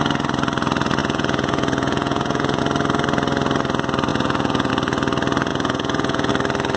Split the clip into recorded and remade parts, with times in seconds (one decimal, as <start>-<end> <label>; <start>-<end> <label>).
0.0-1.0 recorded; 1.0-2.6 remade; 2.6-4.1 recorded; 4.1-4.7 remade; 4.7-5.5 recorded; 5.5-6.3 remade; 6.3-6.8 recorded